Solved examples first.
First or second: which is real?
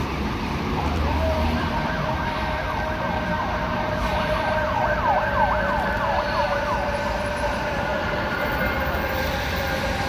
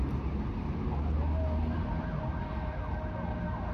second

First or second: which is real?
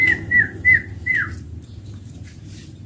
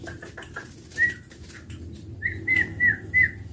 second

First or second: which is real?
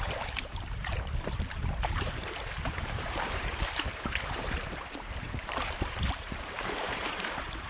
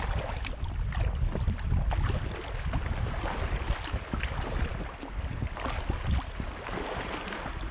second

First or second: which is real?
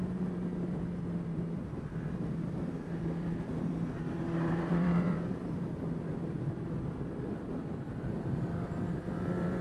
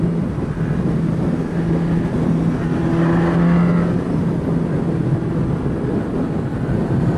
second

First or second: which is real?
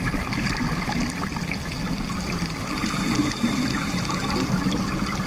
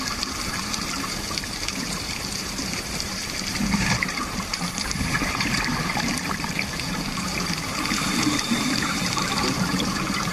first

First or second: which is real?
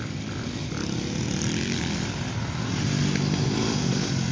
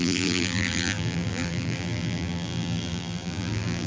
first